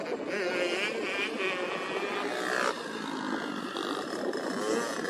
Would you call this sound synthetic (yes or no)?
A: no